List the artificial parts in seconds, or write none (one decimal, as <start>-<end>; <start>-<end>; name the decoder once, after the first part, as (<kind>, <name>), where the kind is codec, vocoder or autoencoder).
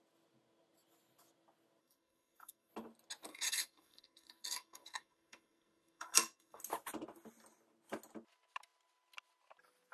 1.8-2.7 (codec, SNAC); 3.3-6.6